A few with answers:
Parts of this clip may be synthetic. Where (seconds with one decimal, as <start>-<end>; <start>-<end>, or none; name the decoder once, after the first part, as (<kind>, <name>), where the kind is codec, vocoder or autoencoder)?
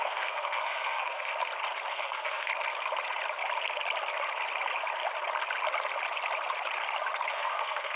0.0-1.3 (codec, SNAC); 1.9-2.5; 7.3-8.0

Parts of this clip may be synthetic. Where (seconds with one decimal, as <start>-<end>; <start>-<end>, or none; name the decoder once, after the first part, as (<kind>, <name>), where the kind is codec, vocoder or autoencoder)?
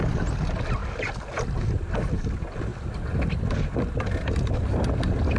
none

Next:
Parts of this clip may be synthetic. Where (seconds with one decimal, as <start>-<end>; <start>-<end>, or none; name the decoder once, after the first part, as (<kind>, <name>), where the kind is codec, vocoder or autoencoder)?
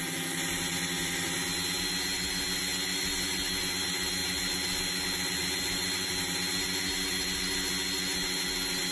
none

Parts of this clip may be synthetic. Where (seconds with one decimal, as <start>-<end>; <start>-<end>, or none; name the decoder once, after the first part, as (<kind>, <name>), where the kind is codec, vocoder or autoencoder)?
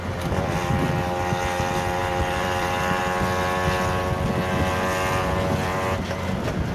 2.0-3.0 (vocoder, BigVGAN v2)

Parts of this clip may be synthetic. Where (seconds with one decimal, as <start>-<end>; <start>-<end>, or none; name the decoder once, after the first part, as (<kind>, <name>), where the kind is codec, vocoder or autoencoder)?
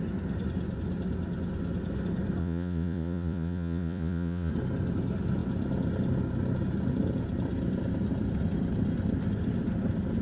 2.4-4.5 (vocoder, Vocos)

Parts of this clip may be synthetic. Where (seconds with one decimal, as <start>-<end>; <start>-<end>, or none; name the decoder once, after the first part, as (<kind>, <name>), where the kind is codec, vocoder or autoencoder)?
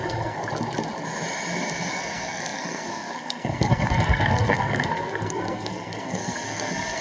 0.0-0.4 (codec, SNAC); 1.9-7.0